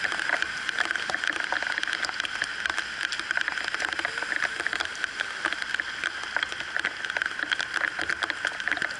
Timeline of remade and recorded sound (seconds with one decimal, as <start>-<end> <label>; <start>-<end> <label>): 0.0-9.0 recorded